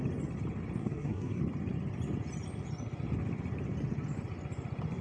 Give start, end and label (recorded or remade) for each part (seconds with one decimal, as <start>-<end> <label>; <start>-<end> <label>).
0.0-0.8 recorded; 0.8-1.4 remade; 1.4-5.0 recorded